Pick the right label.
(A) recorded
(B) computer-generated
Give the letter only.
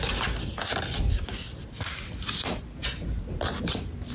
A